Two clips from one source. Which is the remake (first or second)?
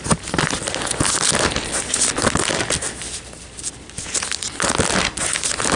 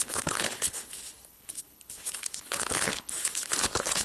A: second